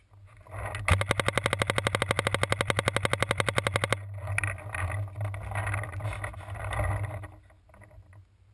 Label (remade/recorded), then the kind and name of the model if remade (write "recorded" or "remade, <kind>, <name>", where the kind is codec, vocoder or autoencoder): recorded